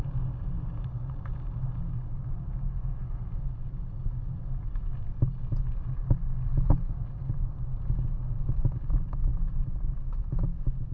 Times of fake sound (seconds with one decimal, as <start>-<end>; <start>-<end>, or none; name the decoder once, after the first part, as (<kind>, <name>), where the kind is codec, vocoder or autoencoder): none